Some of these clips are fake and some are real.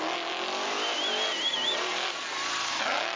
real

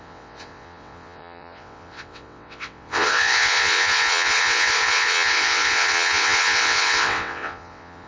fake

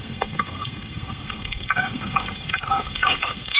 fake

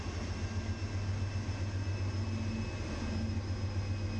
real